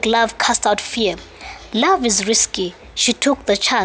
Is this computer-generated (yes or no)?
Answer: no